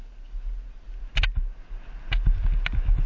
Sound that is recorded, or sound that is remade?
recorded